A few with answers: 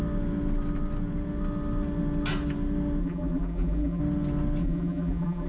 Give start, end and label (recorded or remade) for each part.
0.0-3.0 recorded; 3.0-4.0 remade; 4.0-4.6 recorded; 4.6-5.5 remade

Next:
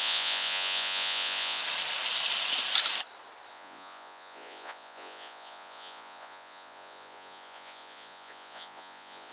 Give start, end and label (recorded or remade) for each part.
0.0-1.6 remade; 1.6-3.5 recorded; 3.5-9.3 remade

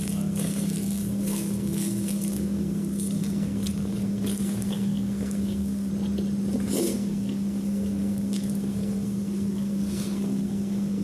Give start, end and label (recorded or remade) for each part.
0.0-5.9 remade; 5.9-6.8 recorded; 6.8-11.0 remade